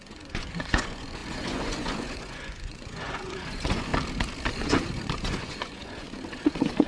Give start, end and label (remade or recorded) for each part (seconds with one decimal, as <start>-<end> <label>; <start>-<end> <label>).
0.0-3.9 remade; 3.9-4.5 recorded; 4.5-6.9 remade